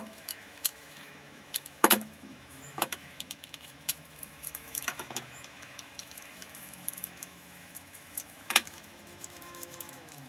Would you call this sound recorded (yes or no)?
no